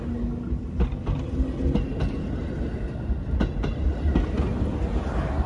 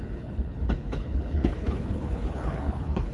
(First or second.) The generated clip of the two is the second